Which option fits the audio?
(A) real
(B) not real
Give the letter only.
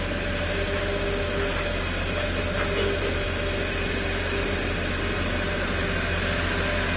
A